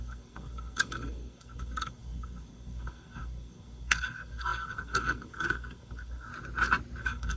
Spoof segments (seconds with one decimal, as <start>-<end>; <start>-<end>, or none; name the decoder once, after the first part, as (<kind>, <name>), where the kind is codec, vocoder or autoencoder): 0.0-6.3 (codec, SNAC); 7.0-7.4